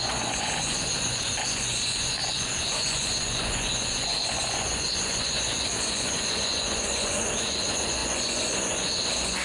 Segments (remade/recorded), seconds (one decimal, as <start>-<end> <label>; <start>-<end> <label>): 0.0-9.4 remade